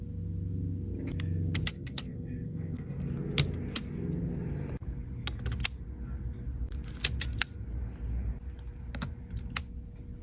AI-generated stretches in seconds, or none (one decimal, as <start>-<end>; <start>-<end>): 1.7-3.1